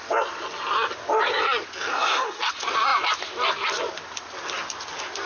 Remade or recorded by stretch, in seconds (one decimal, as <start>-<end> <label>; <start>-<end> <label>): 0.0-1.9 recorded; 1.9-2.5 remade; 2.5-5.3 recorded